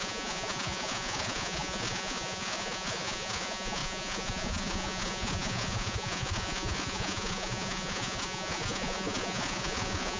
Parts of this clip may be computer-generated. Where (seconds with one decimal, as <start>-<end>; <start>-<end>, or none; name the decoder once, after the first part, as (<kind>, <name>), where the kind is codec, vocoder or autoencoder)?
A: 0.0-10.2 (vocoder, Vocos)